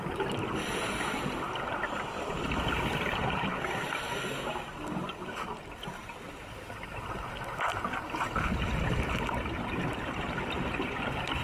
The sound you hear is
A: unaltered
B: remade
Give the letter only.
A